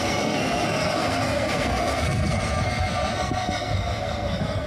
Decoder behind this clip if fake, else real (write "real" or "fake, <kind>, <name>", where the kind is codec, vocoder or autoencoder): fake, codec, SNAC